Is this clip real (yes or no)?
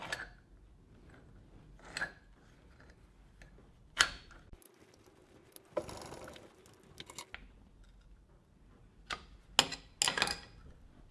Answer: yes